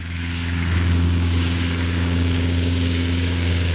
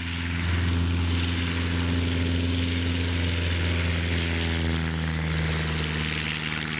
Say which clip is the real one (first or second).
second